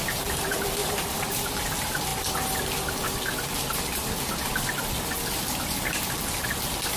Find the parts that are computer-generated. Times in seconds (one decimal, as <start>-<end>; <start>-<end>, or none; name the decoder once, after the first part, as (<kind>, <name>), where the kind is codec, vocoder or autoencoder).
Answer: 0.8-1.3 (vocoder, BigVGAN v2)